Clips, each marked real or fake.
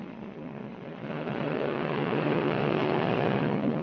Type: fake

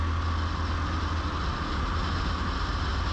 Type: real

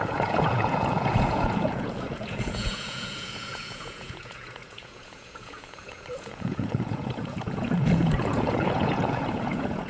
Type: fake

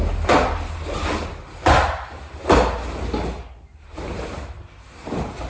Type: real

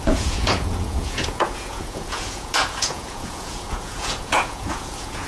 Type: fake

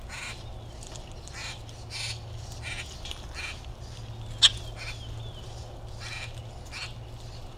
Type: real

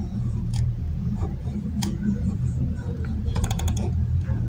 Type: fake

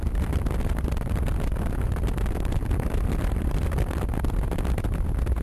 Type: real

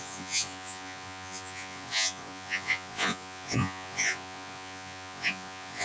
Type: fake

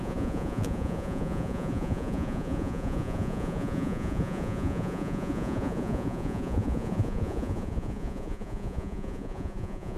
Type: fake